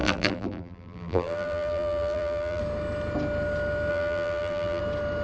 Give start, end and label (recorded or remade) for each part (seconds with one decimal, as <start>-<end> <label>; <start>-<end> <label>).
0.0-2.6 remade; 2.6-3.9 recorded; 3.9-4.8 remade; 4.8-5.2 recorded